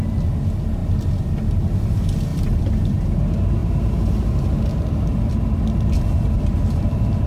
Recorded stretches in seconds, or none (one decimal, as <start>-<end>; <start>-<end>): 0.0-2.3; 3.0-7.3